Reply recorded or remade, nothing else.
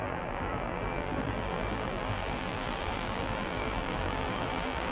remade